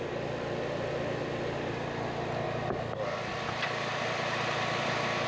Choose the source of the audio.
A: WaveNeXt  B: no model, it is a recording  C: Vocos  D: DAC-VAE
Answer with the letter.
B